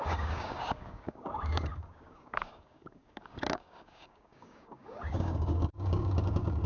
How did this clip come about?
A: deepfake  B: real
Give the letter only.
A